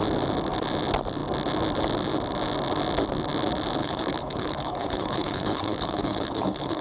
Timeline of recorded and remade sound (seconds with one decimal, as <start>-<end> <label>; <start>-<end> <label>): 0.0-3.8 recorded; 3.8-6.8 remade